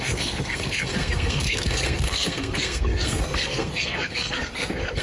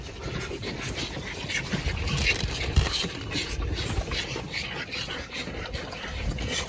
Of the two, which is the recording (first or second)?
second